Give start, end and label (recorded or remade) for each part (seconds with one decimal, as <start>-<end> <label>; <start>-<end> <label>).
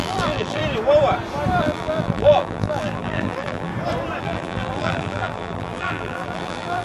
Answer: 0.0-0.6 remade; 0.6-1.6 recorded; 1.6-3.7 remade; 3.7-4.2 recorded; 4.2-6.8 remade